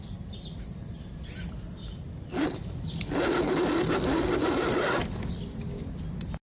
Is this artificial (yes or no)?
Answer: no